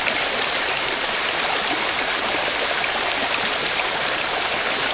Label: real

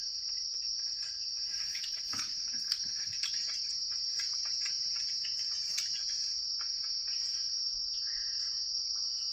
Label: fake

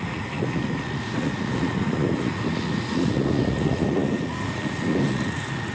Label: fake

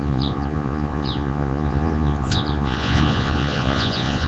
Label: fake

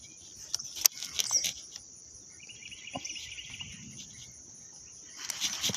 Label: real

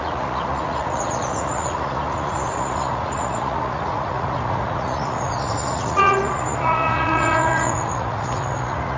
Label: fake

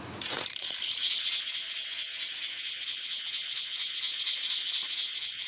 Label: fake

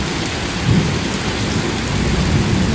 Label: real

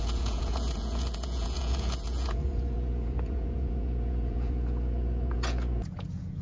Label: fake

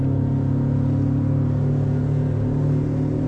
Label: real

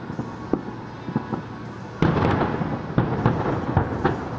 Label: real